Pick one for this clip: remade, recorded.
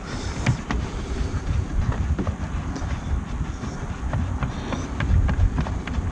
recorded